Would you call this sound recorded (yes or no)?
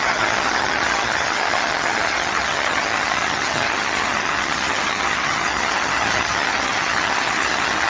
no